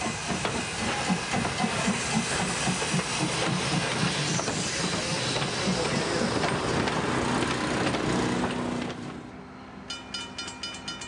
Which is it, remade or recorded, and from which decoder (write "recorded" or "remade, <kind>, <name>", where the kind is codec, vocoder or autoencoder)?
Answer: recorded